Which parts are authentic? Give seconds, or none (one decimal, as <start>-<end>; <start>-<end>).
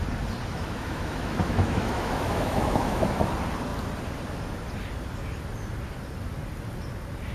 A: 0.0-0.5; 3.3-7.3